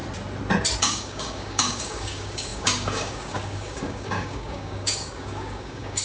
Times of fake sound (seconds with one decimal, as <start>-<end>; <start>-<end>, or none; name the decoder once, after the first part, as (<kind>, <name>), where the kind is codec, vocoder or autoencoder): 0.8-6.0 (codec, DAC)